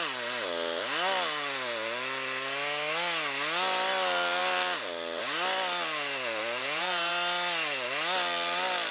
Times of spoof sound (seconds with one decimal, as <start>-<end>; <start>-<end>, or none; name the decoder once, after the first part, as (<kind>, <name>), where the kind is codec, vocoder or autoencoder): 6.6-7.1 (vocoder, Vocos)